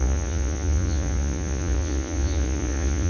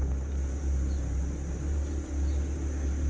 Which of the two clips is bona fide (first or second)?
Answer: second